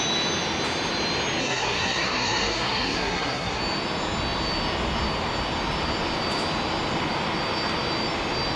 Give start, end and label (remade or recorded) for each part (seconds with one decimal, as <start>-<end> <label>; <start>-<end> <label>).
0.0-1.4 recorded; 1.4-3.6 remade; 3.6-8.6 recorded